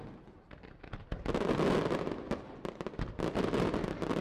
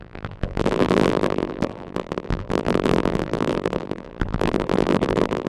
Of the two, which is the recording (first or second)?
first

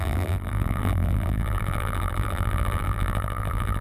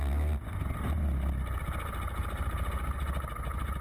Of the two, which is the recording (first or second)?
second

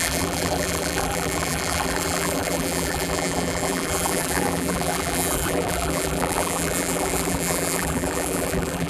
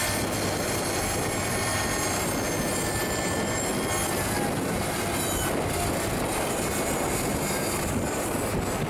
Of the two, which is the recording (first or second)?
second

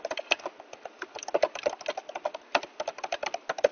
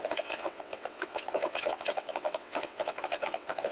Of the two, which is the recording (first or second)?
first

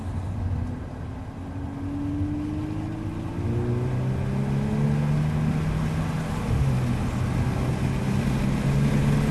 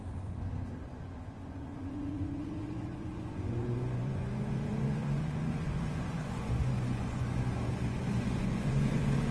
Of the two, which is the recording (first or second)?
first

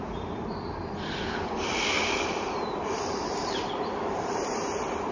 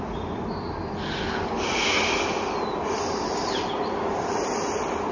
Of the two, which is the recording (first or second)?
second